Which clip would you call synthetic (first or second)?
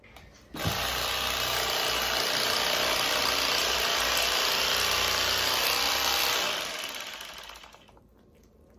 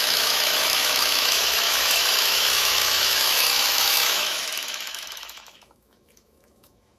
second